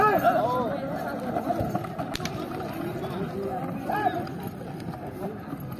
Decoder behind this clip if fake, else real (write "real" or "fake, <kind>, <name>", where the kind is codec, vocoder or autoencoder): real